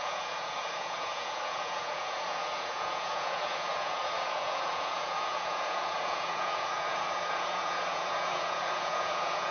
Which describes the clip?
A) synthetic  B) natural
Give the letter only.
A